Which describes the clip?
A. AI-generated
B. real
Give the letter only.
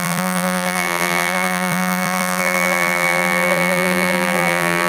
A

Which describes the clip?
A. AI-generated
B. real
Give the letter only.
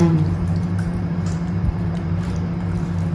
A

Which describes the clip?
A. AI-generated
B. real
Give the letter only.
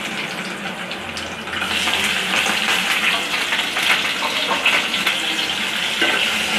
B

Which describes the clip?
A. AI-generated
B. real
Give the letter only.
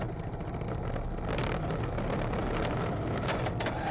B